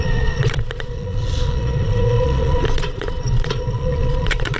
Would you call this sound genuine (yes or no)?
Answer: no